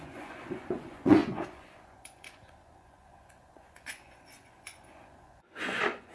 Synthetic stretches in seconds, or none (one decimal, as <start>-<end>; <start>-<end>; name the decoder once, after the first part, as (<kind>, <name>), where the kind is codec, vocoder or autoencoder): 0.0-6.1 (vocoder, Vocos)